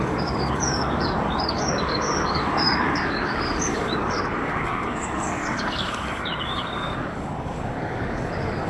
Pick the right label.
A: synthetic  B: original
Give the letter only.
A